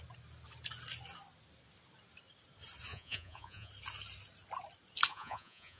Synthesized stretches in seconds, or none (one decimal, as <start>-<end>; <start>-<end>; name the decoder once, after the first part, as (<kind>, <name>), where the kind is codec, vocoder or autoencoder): 2.9-3.7 (vocoder, Vocos); 5.1-5.8